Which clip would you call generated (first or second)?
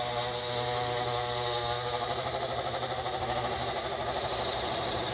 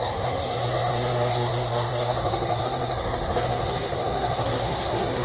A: second